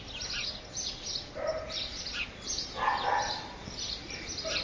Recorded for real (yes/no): yes